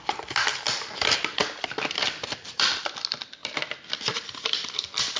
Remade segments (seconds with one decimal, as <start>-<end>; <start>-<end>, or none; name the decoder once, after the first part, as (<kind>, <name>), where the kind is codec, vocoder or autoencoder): 0.5-2.8 (vocoder, BigVGAN v2); 3.4-5.2